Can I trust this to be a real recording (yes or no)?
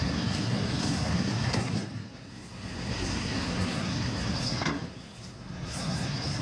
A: no